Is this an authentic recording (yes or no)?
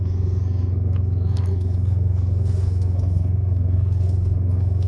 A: no